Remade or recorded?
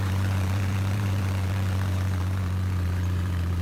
remade